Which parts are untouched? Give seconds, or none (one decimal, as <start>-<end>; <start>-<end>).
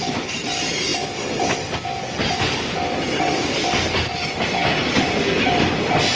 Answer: 0.0-6.2